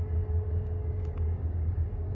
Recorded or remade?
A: remade